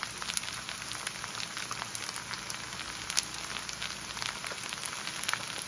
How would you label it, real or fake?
real